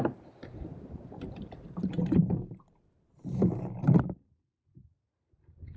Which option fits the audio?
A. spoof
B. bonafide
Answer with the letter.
A